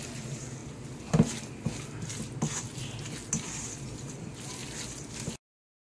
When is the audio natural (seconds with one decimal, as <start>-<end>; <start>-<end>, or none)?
0.0-5.8